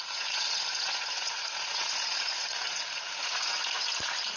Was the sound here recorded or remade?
remade